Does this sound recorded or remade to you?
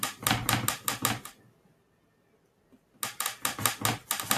recorded